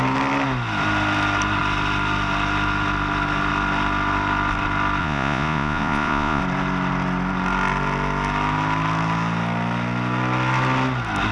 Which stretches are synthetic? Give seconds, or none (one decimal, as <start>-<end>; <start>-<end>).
5.0-6.4